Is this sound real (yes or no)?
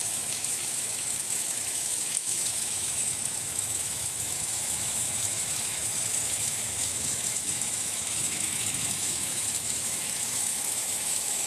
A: no